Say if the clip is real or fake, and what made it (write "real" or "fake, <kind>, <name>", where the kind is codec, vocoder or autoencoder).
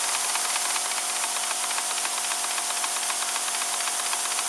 real